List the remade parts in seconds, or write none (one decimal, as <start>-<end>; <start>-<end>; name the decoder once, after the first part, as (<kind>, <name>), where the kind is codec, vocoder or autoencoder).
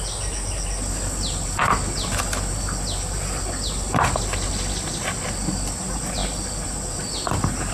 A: none